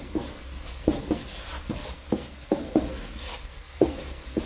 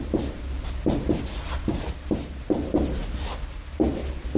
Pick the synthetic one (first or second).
first